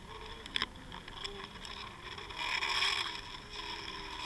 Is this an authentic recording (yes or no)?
yes